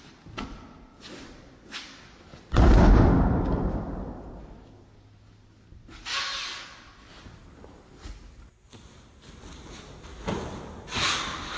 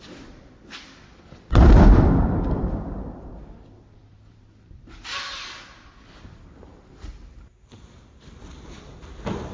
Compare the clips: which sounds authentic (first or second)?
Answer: first